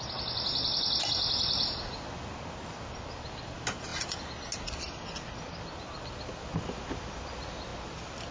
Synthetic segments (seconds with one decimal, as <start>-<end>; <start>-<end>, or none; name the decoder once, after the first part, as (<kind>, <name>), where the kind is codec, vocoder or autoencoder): none